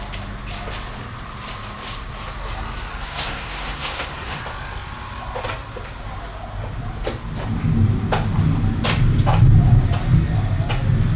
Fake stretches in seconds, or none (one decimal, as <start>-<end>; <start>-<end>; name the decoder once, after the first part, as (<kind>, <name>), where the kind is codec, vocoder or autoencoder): 2.9-4.4 (codec, SNAC)